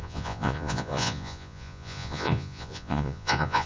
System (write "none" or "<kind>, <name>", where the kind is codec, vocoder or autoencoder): vocoder, Vocos